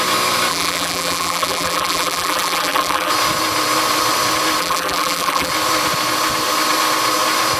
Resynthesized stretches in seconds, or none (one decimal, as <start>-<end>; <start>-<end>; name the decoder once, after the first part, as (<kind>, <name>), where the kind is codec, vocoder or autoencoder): 0.5-3.1 (vocoder, BigVGAN v2); 4.6-5.5

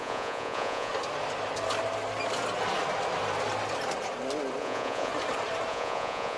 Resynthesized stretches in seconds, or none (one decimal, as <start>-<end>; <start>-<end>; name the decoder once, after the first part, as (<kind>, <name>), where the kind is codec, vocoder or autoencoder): 0.0-0.9 (vocoder, Vocos); 4.6-5.1; 5.7-6.4

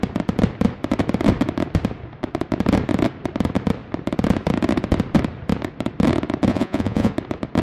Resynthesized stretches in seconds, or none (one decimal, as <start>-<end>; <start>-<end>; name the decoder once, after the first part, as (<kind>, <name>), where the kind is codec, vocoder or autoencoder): 6.5-7.1 (vocoder, Vocos)

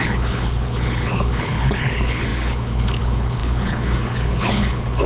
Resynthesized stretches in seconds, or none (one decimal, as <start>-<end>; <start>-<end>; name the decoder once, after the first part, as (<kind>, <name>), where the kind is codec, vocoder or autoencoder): 0.0-5.1 (codec, HILCodec)

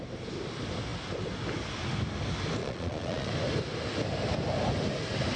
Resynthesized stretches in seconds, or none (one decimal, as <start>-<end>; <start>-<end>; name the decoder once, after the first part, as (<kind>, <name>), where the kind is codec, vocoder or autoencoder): 2.6-3.3 (vocoder, Vocos)

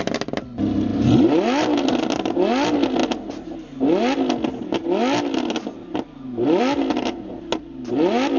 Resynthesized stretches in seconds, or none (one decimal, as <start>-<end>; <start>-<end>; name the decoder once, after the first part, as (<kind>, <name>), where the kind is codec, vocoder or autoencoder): none

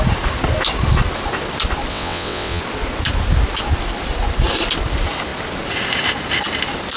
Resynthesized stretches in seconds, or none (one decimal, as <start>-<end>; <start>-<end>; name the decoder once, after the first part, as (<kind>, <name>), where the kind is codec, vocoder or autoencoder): 1.9-2.6 (vocoder, WaveNeXt)